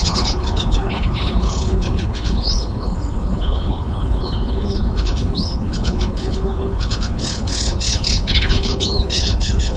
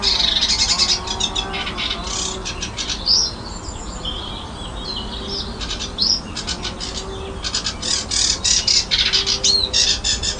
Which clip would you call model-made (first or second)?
first